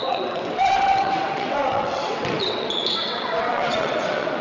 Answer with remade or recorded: remade